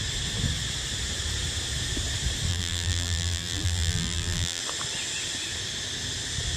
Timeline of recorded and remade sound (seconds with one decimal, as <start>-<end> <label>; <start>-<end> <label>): 0.0-2.5 recorded; 2.5-4.6 remade; 4.6-6.6 recorded